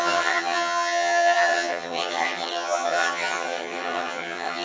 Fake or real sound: fake